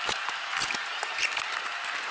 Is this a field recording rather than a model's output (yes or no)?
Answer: yes